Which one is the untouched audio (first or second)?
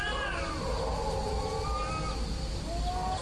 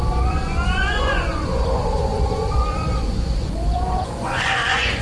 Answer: first